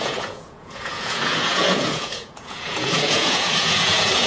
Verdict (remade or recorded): remade